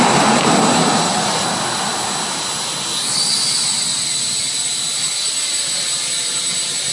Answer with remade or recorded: recorded